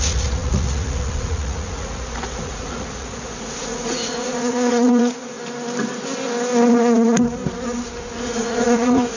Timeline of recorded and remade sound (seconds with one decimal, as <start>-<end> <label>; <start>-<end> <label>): 0.0-5.4 remade; 5.4-6.8 recorded; 6.8-7.4 remade; 7.4-8.2 recorded; 8.2-9.2 remade